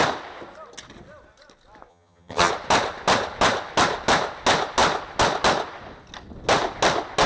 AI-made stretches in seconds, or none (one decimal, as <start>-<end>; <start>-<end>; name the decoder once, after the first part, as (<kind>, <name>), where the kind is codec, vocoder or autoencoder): 1.9-2.5 (vocoder, HiFi-GAN)